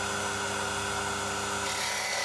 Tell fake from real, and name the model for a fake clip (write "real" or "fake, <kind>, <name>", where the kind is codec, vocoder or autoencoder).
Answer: real